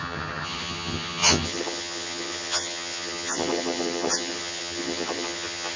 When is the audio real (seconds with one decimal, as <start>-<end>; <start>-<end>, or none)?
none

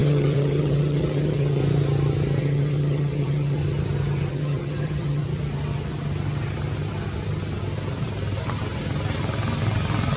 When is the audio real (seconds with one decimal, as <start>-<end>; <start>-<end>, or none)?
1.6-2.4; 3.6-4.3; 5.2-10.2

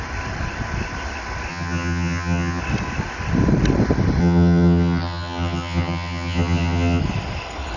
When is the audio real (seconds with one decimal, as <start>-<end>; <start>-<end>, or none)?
0.0-1.5; 2.6-4.2; 7.0-7.8

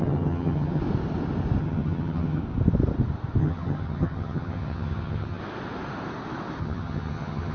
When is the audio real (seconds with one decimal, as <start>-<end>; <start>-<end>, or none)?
0.8-1.6; 2.4-3.4; 5.4-6.6